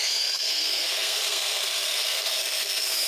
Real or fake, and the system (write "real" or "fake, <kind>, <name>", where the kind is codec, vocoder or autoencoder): fake, codec, SNAC